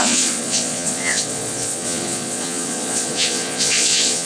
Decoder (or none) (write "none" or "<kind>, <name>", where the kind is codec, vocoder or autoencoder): vocoder, Vocos